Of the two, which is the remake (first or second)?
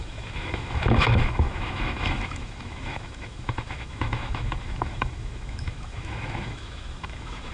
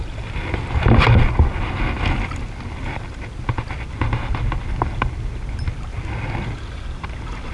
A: first